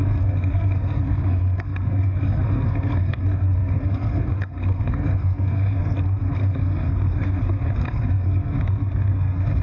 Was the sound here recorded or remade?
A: remade